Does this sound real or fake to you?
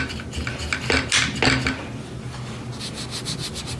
real